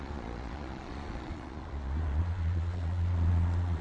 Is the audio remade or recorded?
remade